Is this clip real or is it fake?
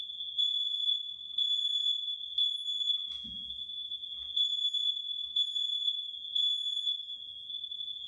fake